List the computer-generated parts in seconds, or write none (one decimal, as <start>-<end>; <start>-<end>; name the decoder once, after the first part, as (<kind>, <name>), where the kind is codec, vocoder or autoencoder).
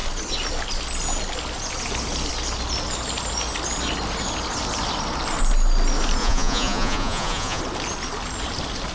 6.2-7.6 (vocoder, Vocos)